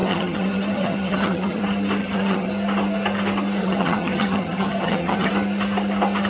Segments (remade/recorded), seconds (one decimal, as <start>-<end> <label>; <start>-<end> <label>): 0.0-1.6 remade; 1.6-2.0 recorded; 2.0-2.5 remade; 2.5-3.6 recorded; 3.6-5.3 remade; 5.3-6.3 recorded